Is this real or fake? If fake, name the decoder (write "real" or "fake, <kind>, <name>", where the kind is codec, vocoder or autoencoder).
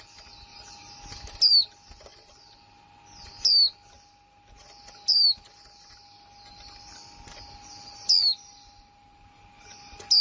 real